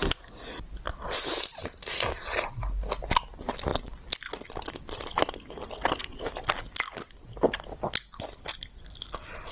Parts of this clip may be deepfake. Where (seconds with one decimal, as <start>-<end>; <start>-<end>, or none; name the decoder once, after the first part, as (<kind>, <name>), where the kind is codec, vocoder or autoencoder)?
none